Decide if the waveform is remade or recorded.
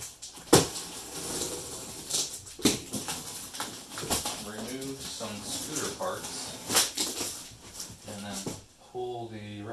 recorded